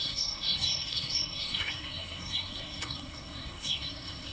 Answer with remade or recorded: remade